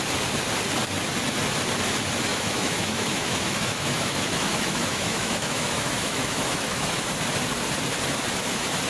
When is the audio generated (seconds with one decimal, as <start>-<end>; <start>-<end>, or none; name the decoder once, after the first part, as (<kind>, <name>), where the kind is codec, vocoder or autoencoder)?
2.3-7.1 (autoencoder, DAC-VAE)